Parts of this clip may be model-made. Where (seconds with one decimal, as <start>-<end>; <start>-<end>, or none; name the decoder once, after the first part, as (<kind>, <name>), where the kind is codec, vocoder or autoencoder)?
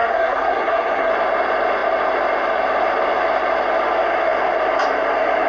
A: 0.0-1.1 (codec, SNAC)